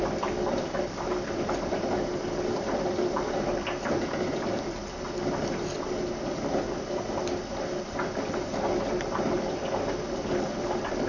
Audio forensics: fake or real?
real